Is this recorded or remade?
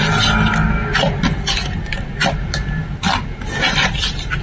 recorded